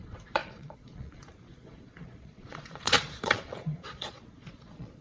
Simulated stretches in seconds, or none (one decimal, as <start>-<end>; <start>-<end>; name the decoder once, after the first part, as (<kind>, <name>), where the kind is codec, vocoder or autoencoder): 0.0-5.0 (vocoder, Vocos)